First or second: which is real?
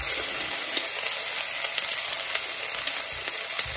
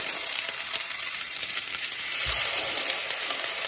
first